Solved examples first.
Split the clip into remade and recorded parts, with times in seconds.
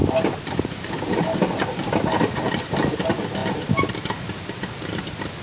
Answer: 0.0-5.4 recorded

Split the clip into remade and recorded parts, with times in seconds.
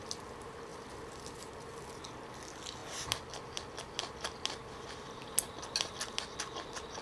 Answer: 0.0-7.0 recorded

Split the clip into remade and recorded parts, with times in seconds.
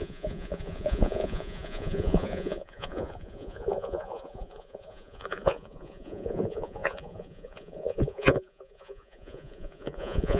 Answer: 0.0-10.4 remade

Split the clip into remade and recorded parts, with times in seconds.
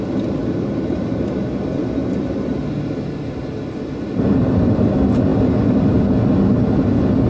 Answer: 0.0-0.4 recorded; 0.4-1.4 remade; 1.4-7.3 recorded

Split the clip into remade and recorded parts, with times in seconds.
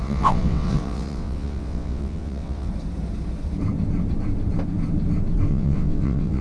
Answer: 0.0-2.7 remade; 2.7-5.5 recorded; 5.5-6.4 remade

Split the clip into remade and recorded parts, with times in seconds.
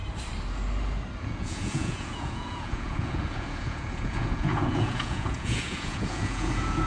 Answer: 0.0-1.2 recorded; 1.2-6.9 remade